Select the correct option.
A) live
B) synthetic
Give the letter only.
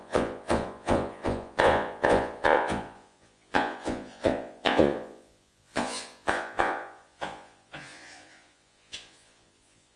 B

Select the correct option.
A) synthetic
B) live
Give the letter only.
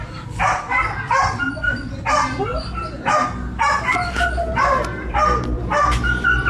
B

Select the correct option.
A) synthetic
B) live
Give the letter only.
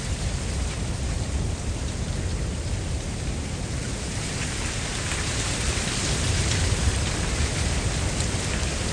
B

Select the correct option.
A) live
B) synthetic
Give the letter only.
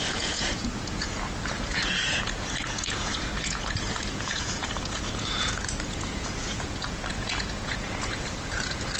B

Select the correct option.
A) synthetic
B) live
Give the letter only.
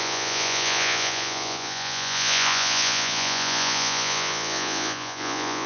A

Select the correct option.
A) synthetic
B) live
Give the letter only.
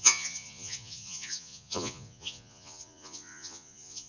A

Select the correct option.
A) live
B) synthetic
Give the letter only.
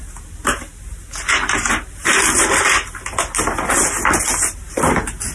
A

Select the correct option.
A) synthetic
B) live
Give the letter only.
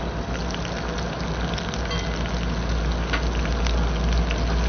B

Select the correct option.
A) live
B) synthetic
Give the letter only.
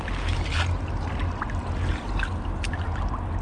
A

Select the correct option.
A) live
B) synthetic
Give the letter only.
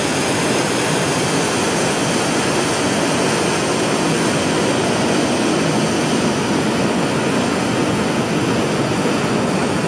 B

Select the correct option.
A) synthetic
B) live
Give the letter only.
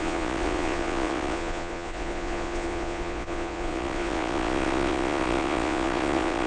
A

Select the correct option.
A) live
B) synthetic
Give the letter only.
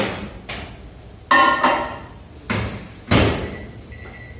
A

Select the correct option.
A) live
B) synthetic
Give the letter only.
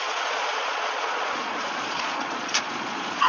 B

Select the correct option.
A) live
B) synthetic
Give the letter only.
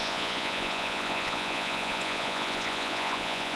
B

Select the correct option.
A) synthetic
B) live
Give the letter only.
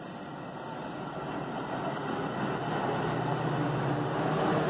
B